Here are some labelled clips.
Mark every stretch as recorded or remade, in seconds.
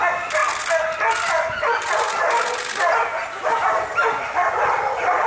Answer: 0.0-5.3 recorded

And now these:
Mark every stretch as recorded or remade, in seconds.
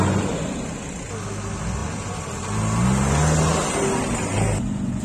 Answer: 0.0-5.0 recorded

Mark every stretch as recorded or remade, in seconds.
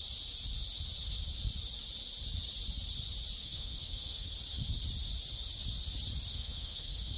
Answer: 0.0-3.4 recorded; 3.4-4.3 remade; 4.3-6.3 recorded; 6.3-7.2 remade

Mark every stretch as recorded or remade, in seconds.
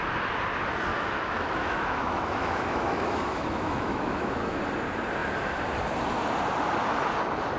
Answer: 0.0-0.9 recorded; 0.9-4.6 remade; 4.6-7.6 recorded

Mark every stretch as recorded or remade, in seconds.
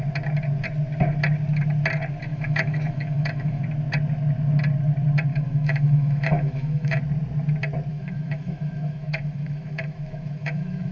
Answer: 0.0-2.3 recorded; 2.3-3.6 remade; 3.6-5.3 recorded; 5.3-7.0 remade; 7.0-7.9 recorded; 7.9-10.9 remade